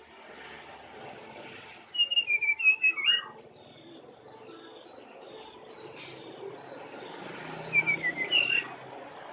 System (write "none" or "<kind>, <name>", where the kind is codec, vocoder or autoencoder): none